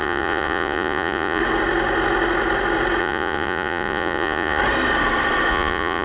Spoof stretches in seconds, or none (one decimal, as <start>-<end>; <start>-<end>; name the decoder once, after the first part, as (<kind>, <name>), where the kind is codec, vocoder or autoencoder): 0.0-1.4 (vocoder, Vocos); 3.0-4.6; 5.5-6.0

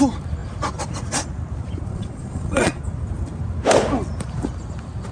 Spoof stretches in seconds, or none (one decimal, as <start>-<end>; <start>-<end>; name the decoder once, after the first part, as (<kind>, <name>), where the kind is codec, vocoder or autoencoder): 1.9-2.8 (vocoder, Vocos)

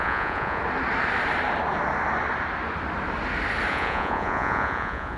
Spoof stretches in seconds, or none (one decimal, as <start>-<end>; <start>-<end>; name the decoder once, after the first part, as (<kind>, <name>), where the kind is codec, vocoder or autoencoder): 0.0-0.6 (vocoder, Vocos); 3.7-5.2

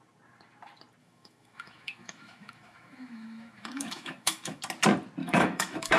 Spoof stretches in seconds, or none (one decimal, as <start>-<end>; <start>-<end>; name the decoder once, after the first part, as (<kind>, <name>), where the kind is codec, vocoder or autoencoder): 1.0-4.6 (autoencoder, DAC-VAE); 5.2-6.0

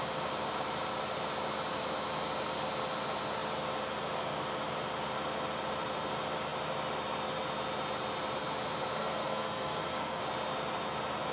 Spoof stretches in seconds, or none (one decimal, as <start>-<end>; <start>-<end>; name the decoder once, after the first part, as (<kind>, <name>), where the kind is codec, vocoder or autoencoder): 9.0-10.2 (codec, SNAC)

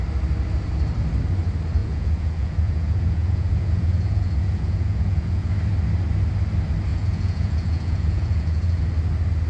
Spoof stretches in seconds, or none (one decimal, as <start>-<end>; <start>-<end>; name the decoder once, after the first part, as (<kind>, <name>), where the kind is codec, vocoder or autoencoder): 1.8-5.5 (vocoder, Vocos); 6.9-8.8